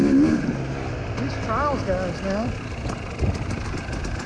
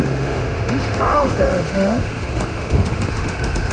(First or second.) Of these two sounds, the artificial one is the second